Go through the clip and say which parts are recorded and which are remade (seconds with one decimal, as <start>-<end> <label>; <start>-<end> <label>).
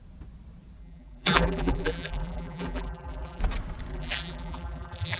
0.0-0.8 recorded; 0.8-3.4 remade; 3.4-3.9 recorded; 3.9-5.2 remade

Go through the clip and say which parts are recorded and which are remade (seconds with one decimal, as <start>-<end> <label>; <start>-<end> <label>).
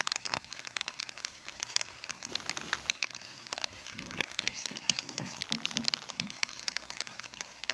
0.0-2.3 remade; 2.3-2.9 recorded; 2.9-5.4 remade; 5.4-6.1 recorded; 6.1-7.7 remade